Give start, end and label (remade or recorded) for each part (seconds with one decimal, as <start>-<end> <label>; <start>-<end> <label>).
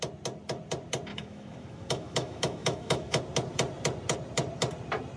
0.0-1.1 recorded; 1.1-3.2 remade; 3.2-5.2 recorded